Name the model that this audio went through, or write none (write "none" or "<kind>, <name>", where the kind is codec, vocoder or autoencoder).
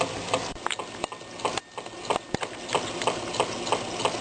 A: none